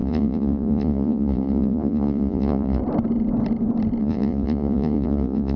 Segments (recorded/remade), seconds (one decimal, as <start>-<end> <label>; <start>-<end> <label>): 0.0-2.8 remade; 2.8-4.0 recorded; 4.0-5.6 remade